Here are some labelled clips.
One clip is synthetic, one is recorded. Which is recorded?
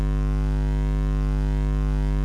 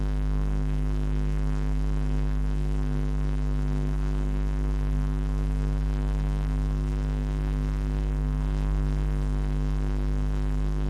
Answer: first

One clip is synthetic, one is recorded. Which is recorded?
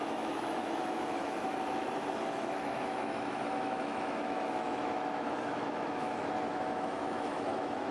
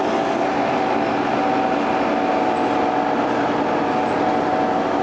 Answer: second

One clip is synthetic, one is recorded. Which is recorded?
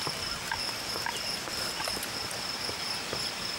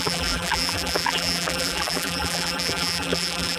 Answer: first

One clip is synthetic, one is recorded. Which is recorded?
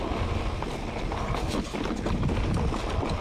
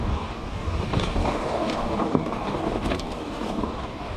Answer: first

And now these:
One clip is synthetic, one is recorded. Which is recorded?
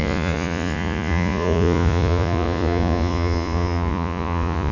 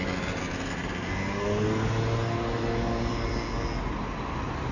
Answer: second